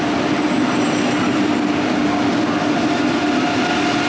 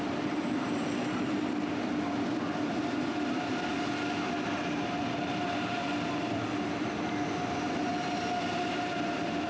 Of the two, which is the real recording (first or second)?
first